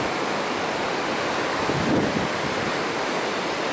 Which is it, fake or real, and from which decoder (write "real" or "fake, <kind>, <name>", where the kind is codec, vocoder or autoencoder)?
real